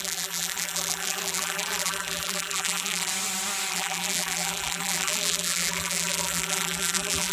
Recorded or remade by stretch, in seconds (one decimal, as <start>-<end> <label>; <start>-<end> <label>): 0.0-3.1 remade; 3.1-3.7 recorded; 3.7-7.3 remade